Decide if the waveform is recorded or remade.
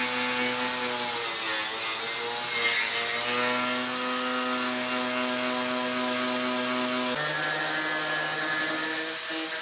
recorded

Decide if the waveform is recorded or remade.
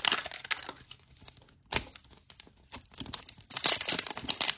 recorded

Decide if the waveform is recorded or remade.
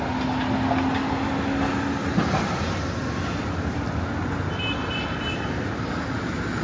recorded